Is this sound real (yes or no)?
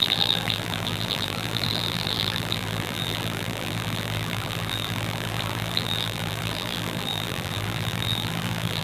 no